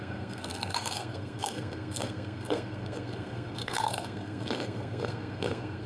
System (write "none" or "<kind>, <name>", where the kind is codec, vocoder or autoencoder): codec, SNAC